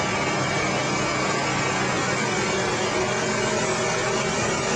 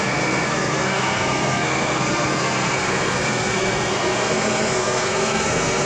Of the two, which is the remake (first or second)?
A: second